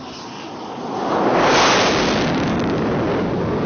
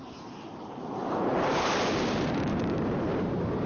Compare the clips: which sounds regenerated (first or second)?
second